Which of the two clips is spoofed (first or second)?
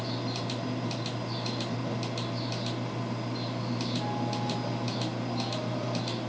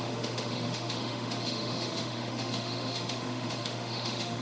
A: second